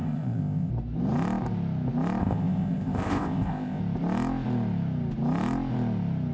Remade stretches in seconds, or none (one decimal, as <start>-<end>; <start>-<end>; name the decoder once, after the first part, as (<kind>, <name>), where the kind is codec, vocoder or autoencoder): 0.0-0.7 (codec, ZipCodec); 2.2-3.8